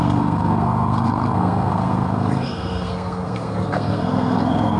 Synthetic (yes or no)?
yes